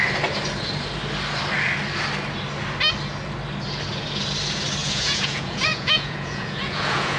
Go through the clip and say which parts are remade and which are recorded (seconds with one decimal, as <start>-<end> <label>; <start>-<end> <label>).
0.0-4.8 recorded; 4.8-7.2 remade